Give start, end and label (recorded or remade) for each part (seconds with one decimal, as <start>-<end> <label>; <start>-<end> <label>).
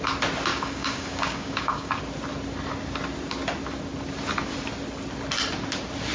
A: 0.0-0.5 recorded; 0.5-2.0 remade; 2.0-6.1 recorded